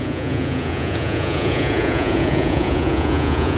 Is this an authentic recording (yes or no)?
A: no